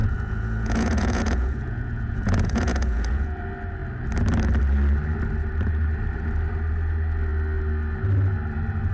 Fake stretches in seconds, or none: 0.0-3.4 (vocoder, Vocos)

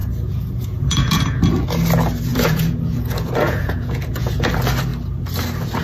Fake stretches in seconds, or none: 0.0-1.4 (vocoder, Vocos); 2.3-4.5

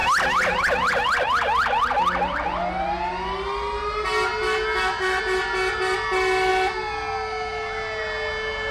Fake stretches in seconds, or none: none